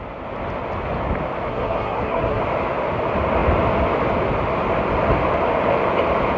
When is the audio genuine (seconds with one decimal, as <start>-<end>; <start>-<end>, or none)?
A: 0.0-1.5; 2.4-6.4

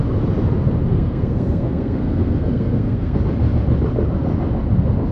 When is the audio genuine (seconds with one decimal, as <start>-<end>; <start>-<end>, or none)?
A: 0.0-0.9; 3.2-5.1

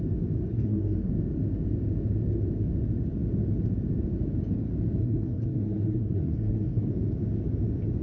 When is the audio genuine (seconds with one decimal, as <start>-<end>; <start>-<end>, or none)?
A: 0.0-0.5; 1.1-5.0; 6.9-8.0

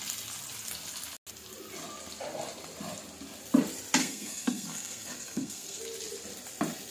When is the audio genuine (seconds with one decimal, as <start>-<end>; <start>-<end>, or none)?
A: 0.0-4.0; 5.8-6.9

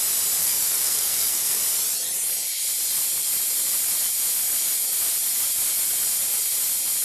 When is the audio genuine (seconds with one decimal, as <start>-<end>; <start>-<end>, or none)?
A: 0.0-0.4; 1.6-7.0

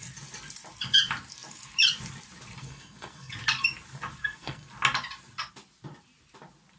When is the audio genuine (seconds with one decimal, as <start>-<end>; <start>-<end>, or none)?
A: 0.0-2.6; 3.3-4.2; 4.7-6.8